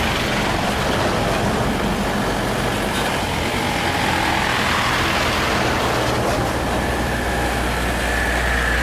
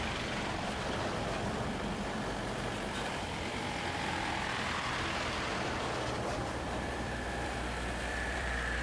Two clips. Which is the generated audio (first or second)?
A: second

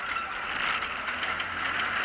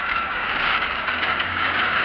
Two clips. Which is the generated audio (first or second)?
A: second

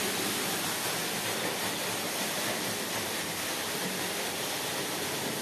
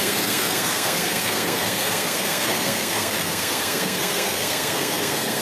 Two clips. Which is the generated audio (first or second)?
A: second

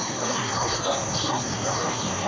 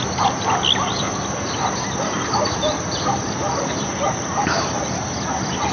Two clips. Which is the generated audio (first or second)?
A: first